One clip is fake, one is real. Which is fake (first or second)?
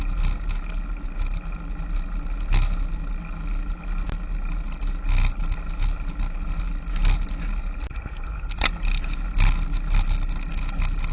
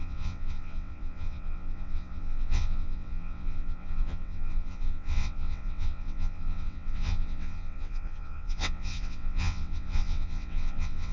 second